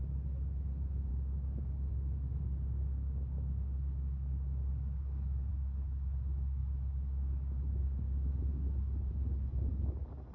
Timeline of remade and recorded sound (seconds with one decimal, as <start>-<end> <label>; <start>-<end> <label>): 0.0-1.1 recorded; 1.1-5.5 remade; 5.5-6.6 recorded; 6.6-8.3 remade; 8.3-10.3 recorded